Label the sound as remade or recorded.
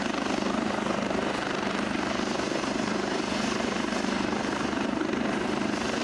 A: remade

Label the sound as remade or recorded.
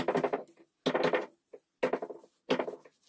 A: recorded